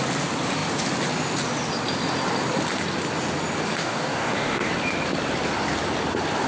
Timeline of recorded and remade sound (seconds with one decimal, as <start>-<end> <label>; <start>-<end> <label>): 0.0-3.8 recorded; 3.8-4.7 remade; 4.7-6.5 recorded